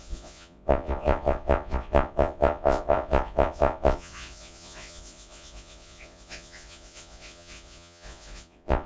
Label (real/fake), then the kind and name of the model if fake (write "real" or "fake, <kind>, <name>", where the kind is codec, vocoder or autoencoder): fake, vocoder, Vocos